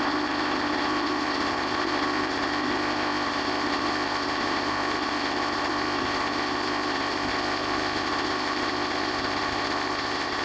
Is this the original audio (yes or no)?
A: no